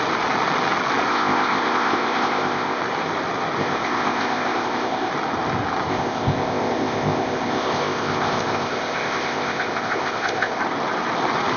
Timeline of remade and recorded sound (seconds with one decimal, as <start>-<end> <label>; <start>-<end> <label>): 0.0-1.1 recorded; 1.1-2.8 remade; 2.8-3.6 recorded; 3.6-5.1 remade; 5.1-5.9 recorded; 5.9-10.6 remade; 10.6-11.6 recorded